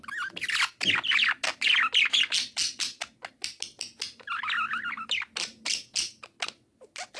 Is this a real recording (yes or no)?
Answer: yes